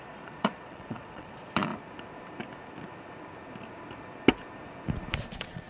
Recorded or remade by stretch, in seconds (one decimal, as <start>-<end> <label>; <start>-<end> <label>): 0.0-1.7 remade; 1.7-5.1 recorded; 5.1-5.7 remade